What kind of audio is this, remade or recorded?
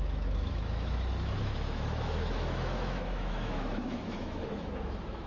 remade